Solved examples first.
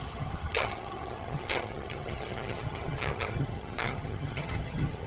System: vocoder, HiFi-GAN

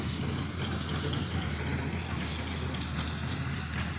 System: none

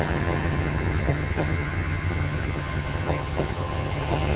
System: vocoder, HiFi-GAN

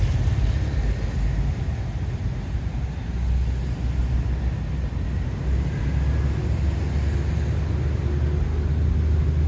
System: none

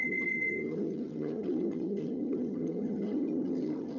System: vocoder, HiFi-GAN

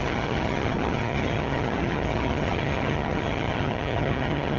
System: vocoder, HiFi-GAN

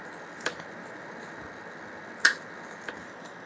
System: none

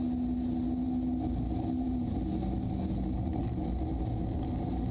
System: none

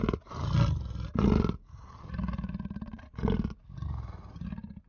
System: none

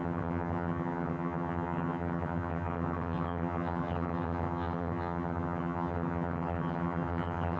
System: vocoder, HiFi-GAN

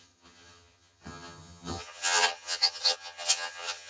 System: vocoder, HiFi-GAN